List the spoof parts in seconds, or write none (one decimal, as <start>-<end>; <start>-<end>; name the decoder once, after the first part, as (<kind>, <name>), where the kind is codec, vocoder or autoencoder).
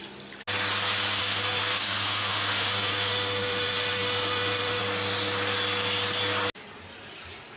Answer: 1.2-4.8 (autoencoder, DAC-VAE)